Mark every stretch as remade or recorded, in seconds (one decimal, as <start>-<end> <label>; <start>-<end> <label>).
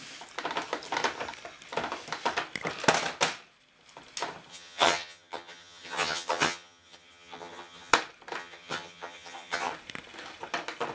0.0-4.5 recorded; 4.5-7.9 remade; 7.9-8.4 recorded; 8.4-9.7 remade; 9.7-10.9 recorded